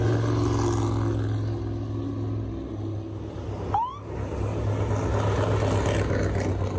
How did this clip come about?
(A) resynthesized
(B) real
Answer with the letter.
B